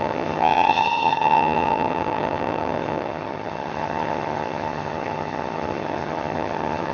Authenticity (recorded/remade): remade